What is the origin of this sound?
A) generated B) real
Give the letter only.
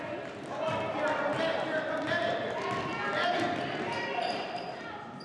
B